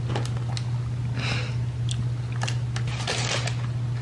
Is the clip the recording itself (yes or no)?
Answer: yes